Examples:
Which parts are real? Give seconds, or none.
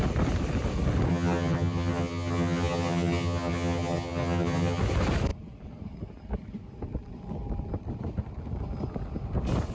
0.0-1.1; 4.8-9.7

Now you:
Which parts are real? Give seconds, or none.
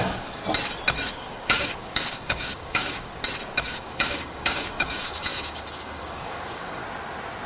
0.4-1.1; 3.1-3.6; 6.8-7.5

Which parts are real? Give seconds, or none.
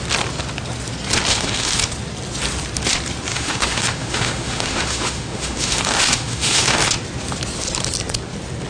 0.0-1.3; 1.8-3.3; 6.8-8.7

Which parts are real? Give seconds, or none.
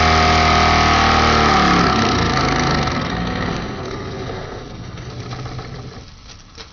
0.0-1.8; 5.1-6.7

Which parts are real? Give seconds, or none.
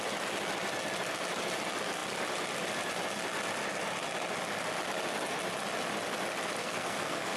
0.0-6.6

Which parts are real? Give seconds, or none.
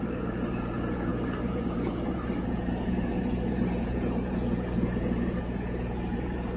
none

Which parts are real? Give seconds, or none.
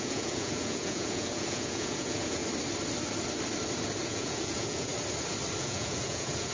2.4-4.0; 4.9-5.6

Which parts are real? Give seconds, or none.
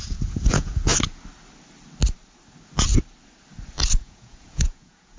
0.9-4.0